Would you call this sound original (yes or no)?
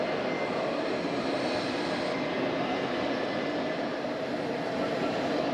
yes